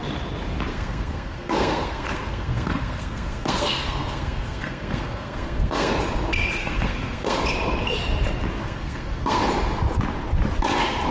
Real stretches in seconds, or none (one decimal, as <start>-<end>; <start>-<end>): 0.0-0.7; 5.9-6.6; 7.4-8.6; 9.4-11.1